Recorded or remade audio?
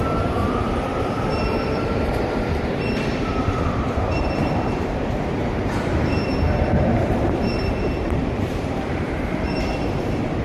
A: remade